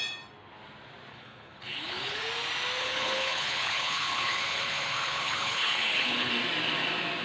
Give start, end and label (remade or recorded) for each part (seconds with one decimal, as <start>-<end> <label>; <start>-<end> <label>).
0.0-1.1 recorded; 1.1-2.2 remade; 2.2-2.8 recorded; 2.8-6.3 remade; 6.3-7.2 recorded